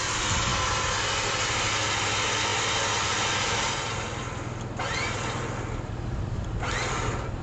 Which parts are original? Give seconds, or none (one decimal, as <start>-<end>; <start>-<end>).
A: 0.0-7.4